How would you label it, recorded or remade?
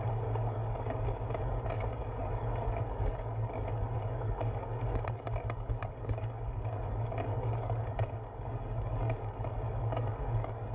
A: remade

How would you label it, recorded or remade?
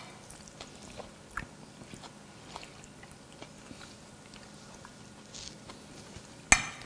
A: recorded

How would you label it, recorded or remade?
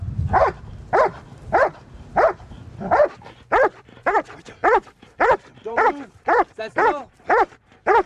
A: remade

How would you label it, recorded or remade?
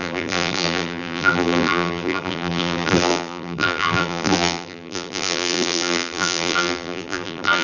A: remade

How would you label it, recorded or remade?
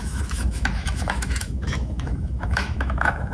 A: remade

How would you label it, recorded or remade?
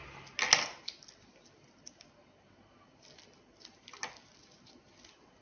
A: recorded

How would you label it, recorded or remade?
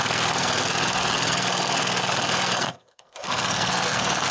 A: remade